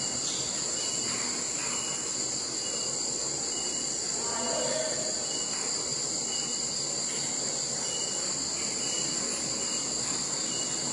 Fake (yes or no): no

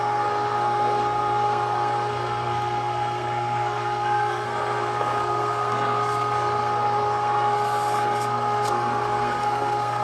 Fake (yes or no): yes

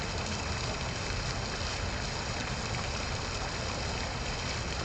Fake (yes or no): no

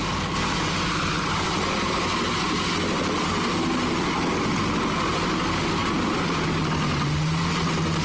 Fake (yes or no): no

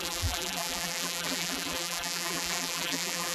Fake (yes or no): yes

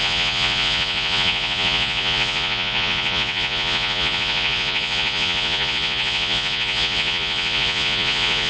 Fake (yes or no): yes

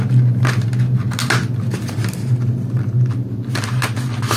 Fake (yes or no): no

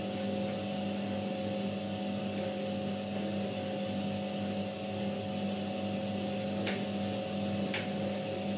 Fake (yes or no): no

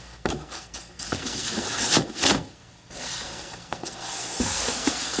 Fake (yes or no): yes